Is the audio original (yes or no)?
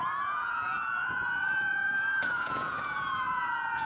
no